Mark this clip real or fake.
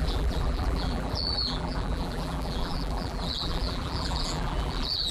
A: fake